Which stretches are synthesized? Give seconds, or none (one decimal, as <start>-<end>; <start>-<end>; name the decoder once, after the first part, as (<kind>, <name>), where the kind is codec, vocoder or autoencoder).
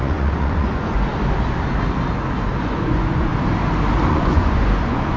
0.0-1.1 (vocoder, Vocos); 2.6-3.3; 4.1-5.2